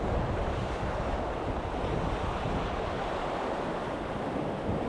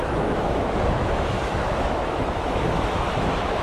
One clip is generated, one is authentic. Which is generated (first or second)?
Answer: second